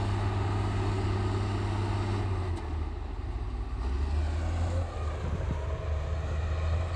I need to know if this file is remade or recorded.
recorded